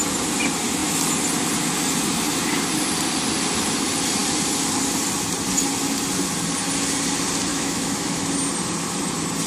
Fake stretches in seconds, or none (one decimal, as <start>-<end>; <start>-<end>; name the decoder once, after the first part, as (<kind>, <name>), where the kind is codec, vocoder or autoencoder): 7.5-8.2 (autoencoder, DAC-VAE)